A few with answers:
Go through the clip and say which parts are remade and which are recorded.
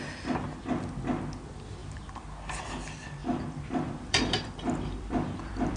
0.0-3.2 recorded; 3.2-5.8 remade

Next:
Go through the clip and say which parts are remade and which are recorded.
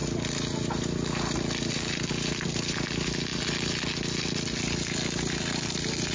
0.0-6.1 recorded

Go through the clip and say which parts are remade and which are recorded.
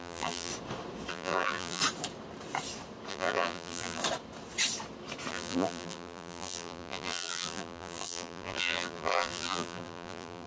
0.0-0.5 remade; 0.5-1.1 recorded; 1.1-1.8 remade; 1.8-3.1 recorded; 3.1-4.0 remade; 4.0-5.3 recorded; 5.3-10.5 remade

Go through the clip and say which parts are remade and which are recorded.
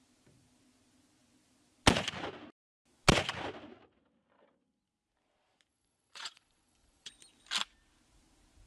0.0-5.7 recorded; 5.7-7.1 remade; 7.1-8.7 recorded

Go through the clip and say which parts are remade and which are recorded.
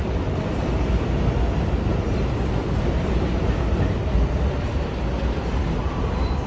0.0-6.5 recorded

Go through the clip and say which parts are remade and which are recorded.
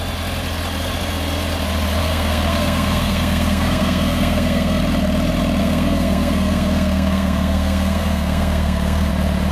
0.0-2.0 recorded; 2.0-4.8 remade; 4.8-5.6 recorded; 5.6-9.1 remade; 9.1-9.5 recorded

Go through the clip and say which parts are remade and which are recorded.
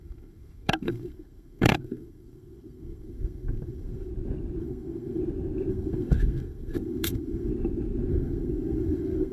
0.0-4.1 remade; 4.1-4.6 recorded; 4.6-5.2 remade; 5.2-5.7 recorded; 5.7-7.5 remade; 7.5-8.1 recorded; 8.1-9.3 remade